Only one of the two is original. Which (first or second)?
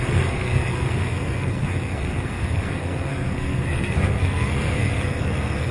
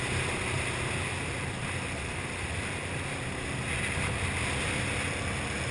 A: second